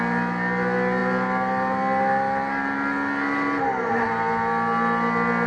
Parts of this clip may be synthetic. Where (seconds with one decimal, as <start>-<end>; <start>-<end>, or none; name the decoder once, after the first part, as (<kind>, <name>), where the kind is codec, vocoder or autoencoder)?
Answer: none